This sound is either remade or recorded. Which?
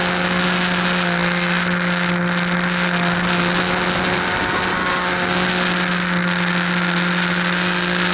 recorded